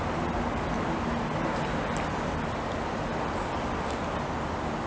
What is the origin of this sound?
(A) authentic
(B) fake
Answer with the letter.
A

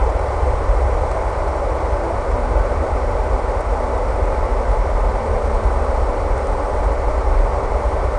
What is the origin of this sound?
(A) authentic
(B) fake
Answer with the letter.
B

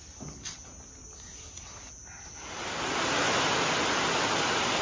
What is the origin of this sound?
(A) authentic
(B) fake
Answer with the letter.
A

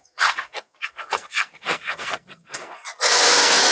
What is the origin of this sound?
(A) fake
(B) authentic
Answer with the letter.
A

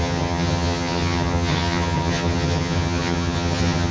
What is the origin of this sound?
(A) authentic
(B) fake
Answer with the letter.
B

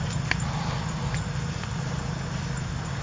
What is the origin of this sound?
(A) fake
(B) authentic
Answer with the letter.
B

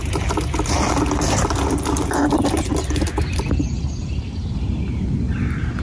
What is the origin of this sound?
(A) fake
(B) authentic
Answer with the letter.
B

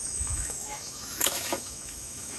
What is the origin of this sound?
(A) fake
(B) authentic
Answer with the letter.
A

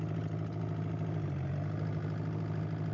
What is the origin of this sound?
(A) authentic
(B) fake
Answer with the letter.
A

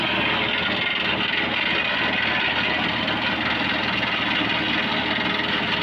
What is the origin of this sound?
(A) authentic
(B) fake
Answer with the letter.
A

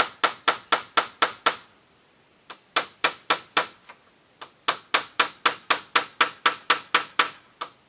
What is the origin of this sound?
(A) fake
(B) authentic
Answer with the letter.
B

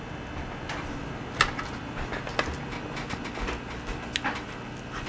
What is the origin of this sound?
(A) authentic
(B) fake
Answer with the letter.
A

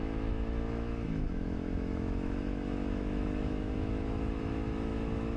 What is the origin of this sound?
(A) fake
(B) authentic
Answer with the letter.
A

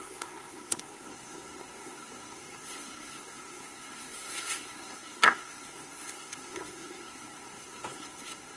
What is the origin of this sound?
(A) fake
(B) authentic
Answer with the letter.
A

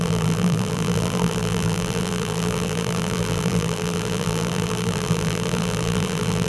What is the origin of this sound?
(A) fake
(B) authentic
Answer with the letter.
A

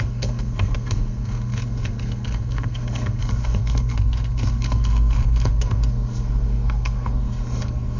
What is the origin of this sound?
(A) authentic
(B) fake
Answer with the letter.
B